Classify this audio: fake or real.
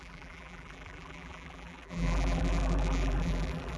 fake